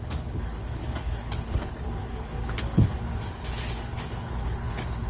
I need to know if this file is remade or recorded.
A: remade